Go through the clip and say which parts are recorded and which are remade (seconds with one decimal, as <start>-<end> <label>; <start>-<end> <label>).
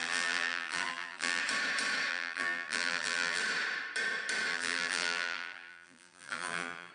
0.0-1.4 remade; 1.4-2.1 recorded; 2.1-3.4 remade; 3.4-4.5 recorded; 4.5-6.9 remade